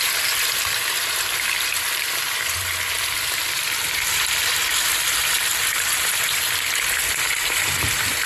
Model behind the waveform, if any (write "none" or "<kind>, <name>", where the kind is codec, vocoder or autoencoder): vocoder, BigVGAN v2